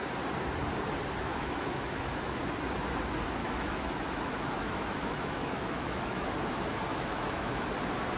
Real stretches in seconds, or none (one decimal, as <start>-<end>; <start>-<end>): 0.0-1.3; 2.4-3.4; 6.3-6.9; 7.7-8.2